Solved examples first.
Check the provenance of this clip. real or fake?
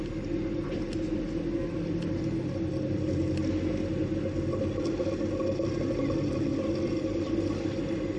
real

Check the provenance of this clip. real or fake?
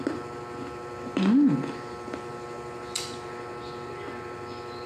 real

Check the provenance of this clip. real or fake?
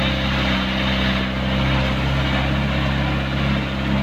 real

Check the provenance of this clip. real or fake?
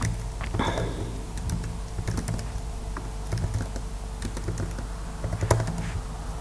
real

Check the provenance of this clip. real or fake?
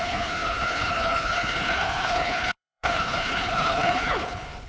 fake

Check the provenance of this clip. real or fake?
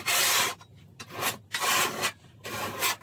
real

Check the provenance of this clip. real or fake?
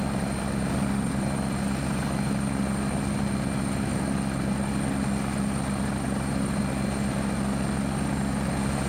real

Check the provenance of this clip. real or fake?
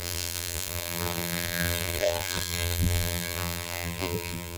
fake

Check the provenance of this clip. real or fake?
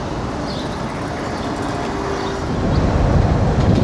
real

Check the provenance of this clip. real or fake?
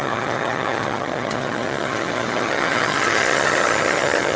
fake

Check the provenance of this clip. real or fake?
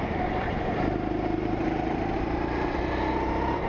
fake